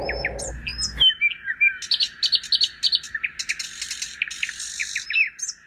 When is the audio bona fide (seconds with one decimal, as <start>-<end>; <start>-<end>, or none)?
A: 0.0-5.7